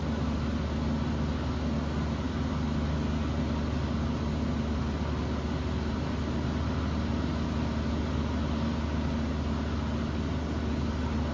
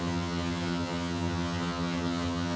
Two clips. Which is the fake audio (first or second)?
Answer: second